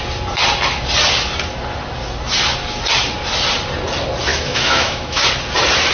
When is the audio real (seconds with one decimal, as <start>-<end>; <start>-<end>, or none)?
0.0-4.3; 5.3-5.9